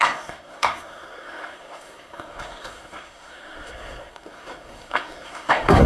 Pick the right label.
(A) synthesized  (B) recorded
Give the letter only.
A